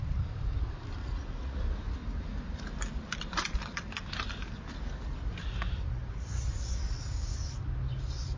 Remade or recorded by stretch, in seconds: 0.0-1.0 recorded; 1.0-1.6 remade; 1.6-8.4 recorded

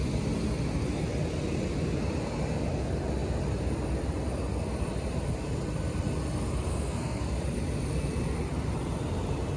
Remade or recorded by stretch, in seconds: 0.0-6.7 recorded; 6.7-7.2 remade; 7.2-9.6 recorded

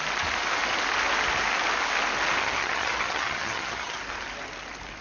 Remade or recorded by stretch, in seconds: 0.0-2.4 recorded; 2.4-4.0 remade; 4.0-5.0 recorded

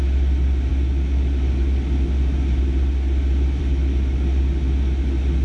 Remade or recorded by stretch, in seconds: 0.0-5.4 recorded

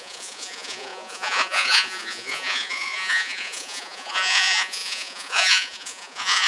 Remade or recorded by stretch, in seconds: 0.0-6.5 remade

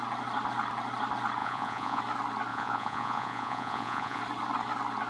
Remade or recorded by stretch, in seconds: 0.0-1.4 recorded; 1.4-2.0 remade; 2.0-2.5 recorded; 2.5-4.2 remade; 4.2-5.1 recorded

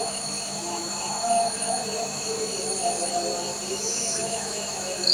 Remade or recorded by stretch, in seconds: 0.0-2.5 remade; 2.5-3.7 recorded; 3.7-5.1 remade

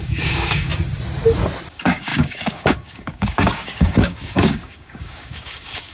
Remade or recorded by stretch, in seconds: 0.0-0.7 remade; 0.7-1.7 recorded; 1.7-5.9 remade